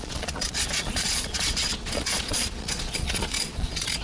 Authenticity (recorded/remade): remade